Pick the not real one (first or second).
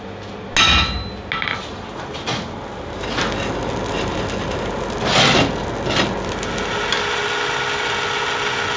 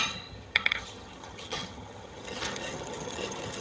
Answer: second